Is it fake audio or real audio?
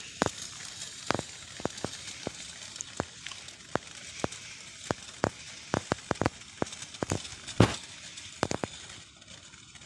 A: real